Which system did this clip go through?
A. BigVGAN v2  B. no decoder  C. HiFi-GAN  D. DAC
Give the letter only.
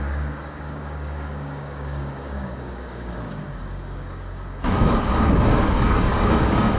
D